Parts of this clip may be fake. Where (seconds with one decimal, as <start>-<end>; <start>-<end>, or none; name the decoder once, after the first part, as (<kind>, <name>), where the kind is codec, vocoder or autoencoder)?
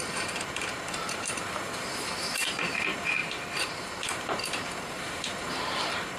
0.0-6.2 (vocoder, BigVGAN v2)